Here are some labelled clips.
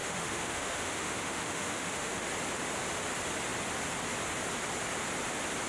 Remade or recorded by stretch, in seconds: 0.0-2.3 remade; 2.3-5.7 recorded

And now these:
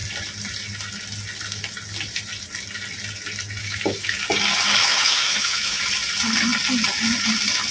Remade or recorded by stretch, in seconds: 0.0-3.6 recorded; 3.6-4.2 remade; 4.2-4.8 recorded; 4.8-5.8 remade; 5.8-7.7 recorded

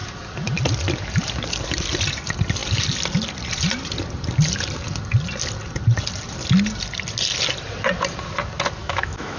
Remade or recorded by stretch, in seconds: 0.0-8.8 recorded; 8.8-9.4 remade